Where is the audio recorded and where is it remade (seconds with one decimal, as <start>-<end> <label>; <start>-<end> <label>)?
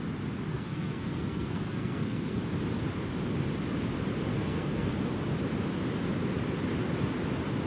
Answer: 0.0-0.5 recorded; 0.5-2.4 remade; 2.4-4.3 recorded; 4.3-4.9 remade; 4.9-7.7 recorded